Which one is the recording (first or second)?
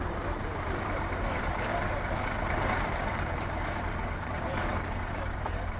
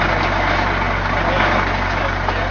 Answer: second